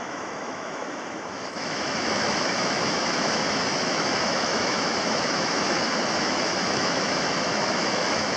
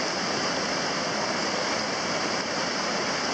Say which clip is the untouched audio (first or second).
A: second